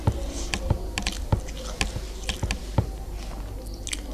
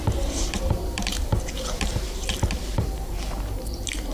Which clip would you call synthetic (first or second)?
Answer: second